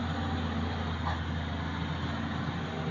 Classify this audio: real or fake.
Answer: real